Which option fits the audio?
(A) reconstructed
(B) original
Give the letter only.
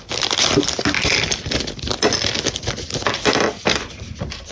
B